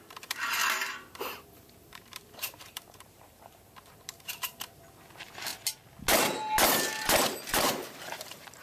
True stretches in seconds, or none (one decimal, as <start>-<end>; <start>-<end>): 5.5-7.3